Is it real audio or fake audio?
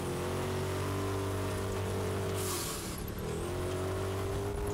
real